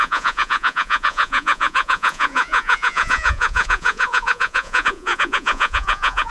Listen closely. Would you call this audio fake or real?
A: fake